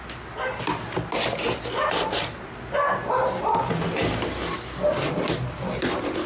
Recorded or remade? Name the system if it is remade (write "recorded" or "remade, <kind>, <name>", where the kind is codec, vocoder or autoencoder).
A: recorded